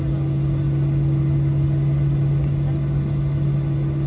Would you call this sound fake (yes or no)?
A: no